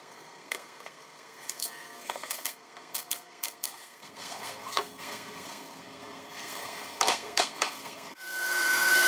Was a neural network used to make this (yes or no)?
yes